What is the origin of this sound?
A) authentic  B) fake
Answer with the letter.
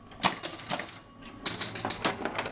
A